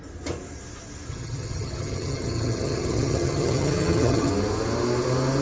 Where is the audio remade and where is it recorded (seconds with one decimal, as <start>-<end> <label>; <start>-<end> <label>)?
0.0-1.1 recorded; 1.1-4.3 remade; 4.3-5.4 recorded